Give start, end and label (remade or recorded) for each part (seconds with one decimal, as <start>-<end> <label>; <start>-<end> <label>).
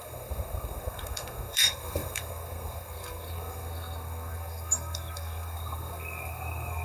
0.0-6.8 remade